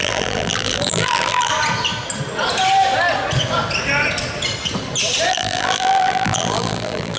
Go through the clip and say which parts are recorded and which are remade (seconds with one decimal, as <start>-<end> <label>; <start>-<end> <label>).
0.0-1.5 remade; 1.5-5.3 recorded; 5.3-7.2 remade